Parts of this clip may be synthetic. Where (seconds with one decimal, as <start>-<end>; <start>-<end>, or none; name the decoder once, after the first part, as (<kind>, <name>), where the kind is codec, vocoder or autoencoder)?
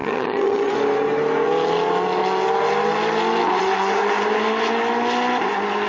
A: 0.0-0.7 (vocoder, HiFi-GAN)